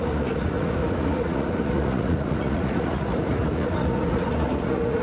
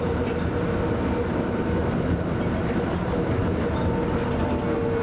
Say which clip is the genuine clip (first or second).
second